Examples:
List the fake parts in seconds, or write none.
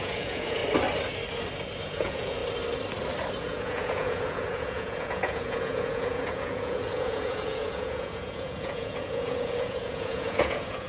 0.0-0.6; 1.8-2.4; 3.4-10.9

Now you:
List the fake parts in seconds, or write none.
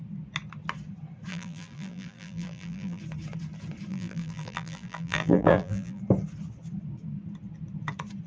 1.3-3.0; 3.9-6.0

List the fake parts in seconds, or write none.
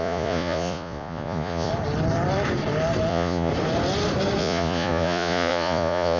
0.0-1.7; 3.1-3.5; 4.4-6.2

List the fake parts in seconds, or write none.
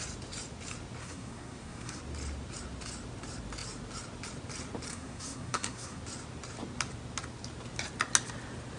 1.0-2.0; 4.9-6.0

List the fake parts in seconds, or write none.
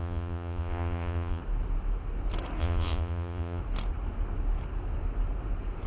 0.0-1.4; 2.6-3.6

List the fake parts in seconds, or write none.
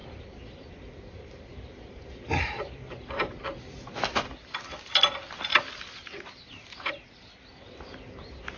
none